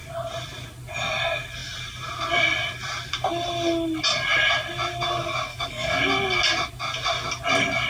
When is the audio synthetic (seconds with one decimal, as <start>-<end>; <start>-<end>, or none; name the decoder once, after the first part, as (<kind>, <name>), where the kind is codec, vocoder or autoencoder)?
5.5-6.0 (codec, DAC)

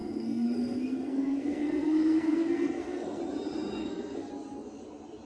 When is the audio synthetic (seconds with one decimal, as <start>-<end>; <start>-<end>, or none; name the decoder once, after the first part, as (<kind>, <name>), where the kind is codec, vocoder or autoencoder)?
0.0-3.2 (codec, SNAC); 3.8-4.3

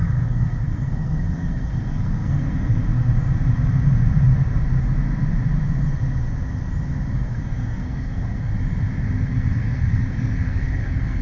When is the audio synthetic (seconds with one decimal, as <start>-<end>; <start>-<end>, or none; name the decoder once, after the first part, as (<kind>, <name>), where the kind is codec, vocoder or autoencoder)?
0.0-2.8 (codec, SNAC); 7.1-8.5; 9.0-11.2